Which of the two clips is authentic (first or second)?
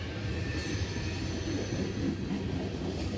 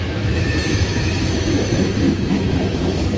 first